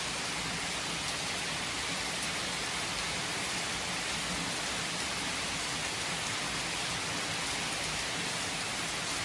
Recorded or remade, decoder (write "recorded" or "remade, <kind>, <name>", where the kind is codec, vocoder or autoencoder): recorded